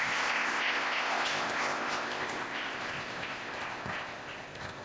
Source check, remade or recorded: remade